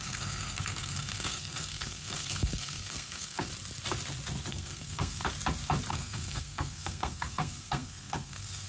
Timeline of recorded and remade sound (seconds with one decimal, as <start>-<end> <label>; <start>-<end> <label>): 0.0-3.5 remade; 3.5-4.5 recorded; 4.5-5.2 remade; 5.2-5.9 recorded; 5.9-8.7 remade